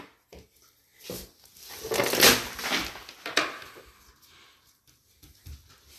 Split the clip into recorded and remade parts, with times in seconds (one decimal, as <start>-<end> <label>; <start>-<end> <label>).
0.0-6.0 recorded